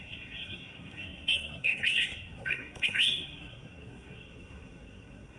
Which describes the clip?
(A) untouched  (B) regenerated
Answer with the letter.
B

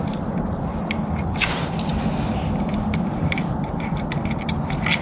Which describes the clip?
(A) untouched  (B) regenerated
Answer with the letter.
A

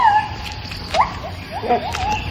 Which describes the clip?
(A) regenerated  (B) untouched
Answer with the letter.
B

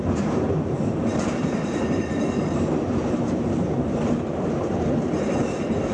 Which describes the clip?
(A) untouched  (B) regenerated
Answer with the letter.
B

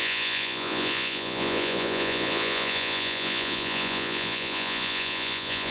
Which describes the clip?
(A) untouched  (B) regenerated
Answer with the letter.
B